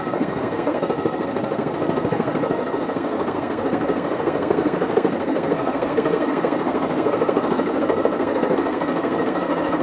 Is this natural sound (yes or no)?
no